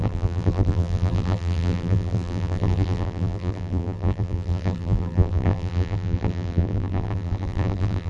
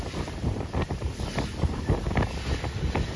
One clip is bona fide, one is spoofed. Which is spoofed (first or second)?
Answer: first